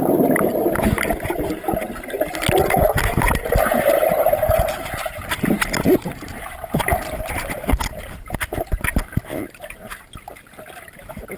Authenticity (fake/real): real